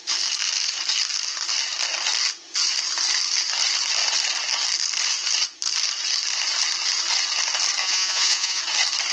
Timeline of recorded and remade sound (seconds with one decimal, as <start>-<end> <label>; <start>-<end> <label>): 0.0-7.8 recorded; 7.8-8.6 remade; 8.6-9.1 recorded